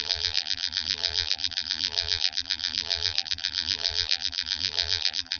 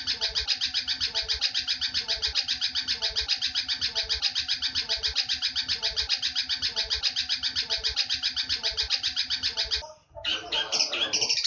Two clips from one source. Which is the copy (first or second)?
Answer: first